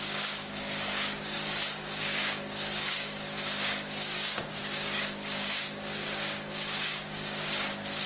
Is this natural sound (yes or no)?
no